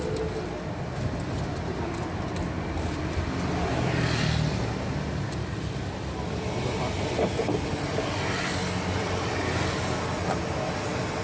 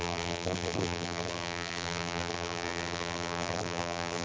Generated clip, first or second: second